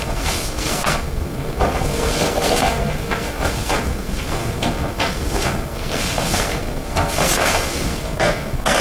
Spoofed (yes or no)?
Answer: yes